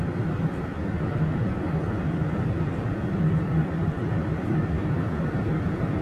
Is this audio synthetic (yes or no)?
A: no